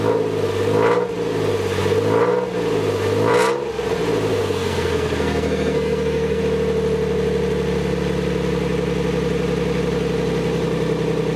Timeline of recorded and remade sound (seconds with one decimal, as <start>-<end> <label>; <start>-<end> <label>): 0.0-4.3 recorded; 4.3-6.4 remade; 6.4-11.4 recorded